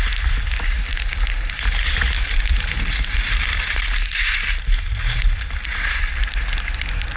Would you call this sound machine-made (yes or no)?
no